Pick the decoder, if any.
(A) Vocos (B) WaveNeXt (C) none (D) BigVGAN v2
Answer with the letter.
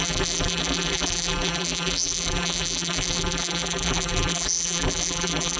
D